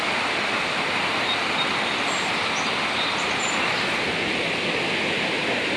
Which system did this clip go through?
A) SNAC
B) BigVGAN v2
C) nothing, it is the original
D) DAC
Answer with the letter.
C